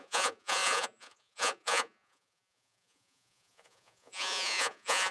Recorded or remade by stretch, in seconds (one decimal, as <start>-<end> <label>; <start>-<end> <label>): 0.0-5.1 remade